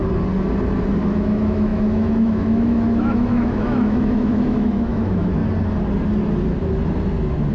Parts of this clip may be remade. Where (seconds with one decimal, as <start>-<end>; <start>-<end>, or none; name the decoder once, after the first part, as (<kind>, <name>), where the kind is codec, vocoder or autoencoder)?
1.0-5.4 (autoencoder, DAC-VAE)